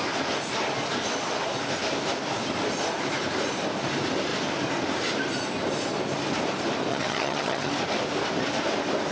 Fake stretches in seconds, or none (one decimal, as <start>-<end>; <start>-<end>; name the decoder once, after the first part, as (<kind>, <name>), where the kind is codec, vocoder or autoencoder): 6.9-7.7 (vocoder, HiFi-GAN)